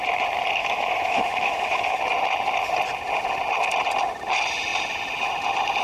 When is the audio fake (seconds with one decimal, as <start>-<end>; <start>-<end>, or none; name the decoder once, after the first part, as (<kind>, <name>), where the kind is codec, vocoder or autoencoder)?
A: 0.6-2.0 (autoencoder, DAC-VAE)